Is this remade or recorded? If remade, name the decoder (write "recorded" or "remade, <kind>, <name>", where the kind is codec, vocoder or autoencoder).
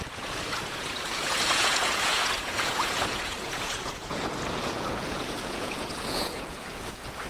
remade, vocoder, Vocos